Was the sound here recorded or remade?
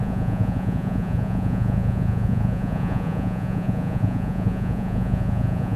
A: remade